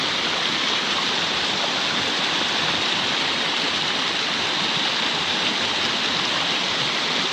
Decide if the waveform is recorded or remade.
recorded